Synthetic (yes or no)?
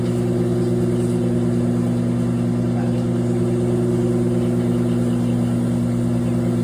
no